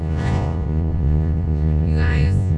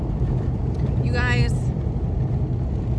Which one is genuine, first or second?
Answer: second